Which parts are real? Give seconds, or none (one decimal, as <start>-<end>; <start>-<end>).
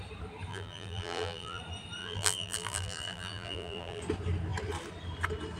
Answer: 0.0-0.5; 1.6-2.0; 4.0-5.6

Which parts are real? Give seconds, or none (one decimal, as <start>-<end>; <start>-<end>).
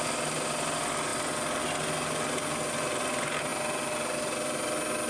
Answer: 0.0-5.1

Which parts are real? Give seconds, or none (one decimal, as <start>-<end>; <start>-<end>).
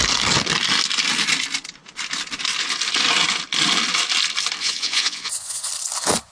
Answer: 0.0-4.6; 5.7-6.3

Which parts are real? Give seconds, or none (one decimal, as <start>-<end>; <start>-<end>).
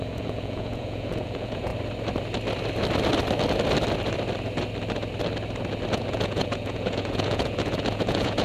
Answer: 1.7-5.9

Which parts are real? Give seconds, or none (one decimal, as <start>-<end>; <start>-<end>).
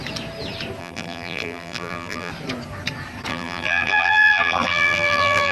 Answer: 0.0-0.8; 2.3-3.3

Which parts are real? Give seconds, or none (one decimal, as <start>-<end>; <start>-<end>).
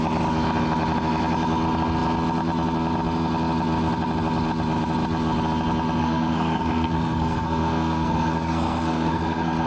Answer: 0.0-6.0